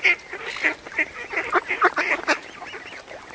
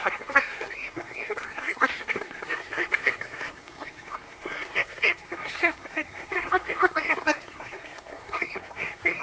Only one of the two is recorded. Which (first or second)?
first